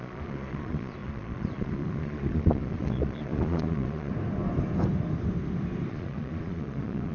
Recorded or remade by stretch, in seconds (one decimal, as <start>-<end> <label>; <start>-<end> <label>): 0.0-4.1 remade; 4.1-5.9 recorded; 5.9-7.1 remade